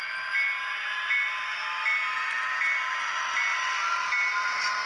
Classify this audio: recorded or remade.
recorded